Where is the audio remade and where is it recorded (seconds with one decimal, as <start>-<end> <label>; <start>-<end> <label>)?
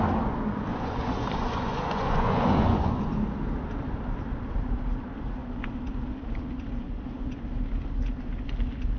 0.0-0.7 recorded; 0.7-3.1 remade; 3.1-9.0 recorded